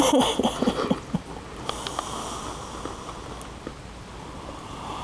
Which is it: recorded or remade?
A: recorded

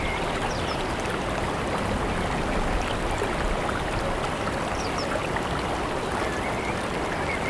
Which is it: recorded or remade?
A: recorded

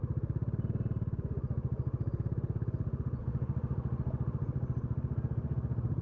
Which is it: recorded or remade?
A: recorded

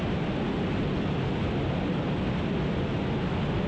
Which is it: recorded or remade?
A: recorded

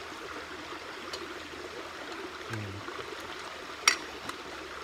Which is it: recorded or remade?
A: recorded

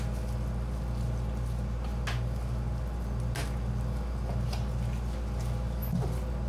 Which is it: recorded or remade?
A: recorded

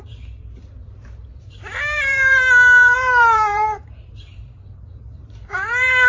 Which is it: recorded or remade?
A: remade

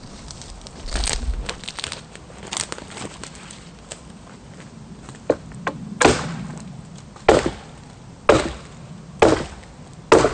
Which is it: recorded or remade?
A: recorded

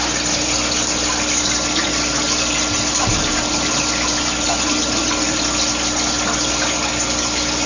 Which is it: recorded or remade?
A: recorded